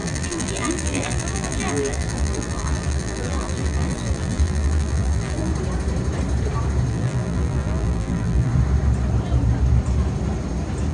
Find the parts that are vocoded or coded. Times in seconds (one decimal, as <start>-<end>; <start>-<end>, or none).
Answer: 0.0-5.5; 6.9-8.5